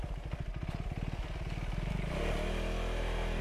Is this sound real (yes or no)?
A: yes